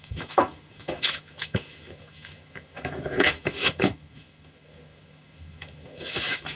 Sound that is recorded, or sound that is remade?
remade